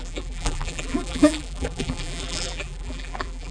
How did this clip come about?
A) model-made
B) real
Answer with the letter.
A